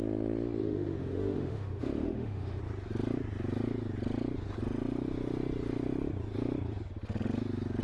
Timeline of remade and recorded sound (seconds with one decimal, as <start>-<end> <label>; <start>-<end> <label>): 0.0-0.6 recorded; 0.6-2.6 remade; 2.6-7.8 recorded